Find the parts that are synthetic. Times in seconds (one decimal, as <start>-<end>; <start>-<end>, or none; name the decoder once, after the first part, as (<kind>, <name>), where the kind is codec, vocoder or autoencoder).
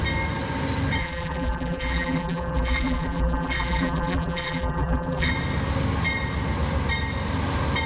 1.0-5.3 (vocoder, BigVGAN v2)